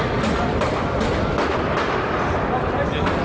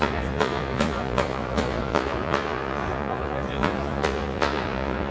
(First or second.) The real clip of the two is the first